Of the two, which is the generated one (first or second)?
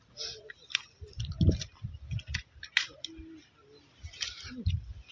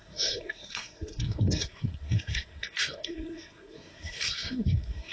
second